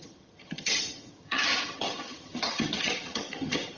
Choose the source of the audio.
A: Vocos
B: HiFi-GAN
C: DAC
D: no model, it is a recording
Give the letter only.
B